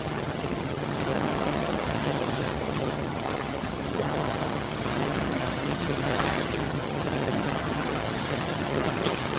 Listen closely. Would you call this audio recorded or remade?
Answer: remade